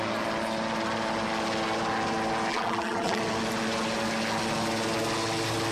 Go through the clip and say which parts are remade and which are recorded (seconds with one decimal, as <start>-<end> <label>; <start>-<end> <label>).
0.0-2.5 recorded; 2.5-3.2 remade; 3.2-5.7 recorded